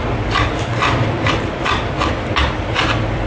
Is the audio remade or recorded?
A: remade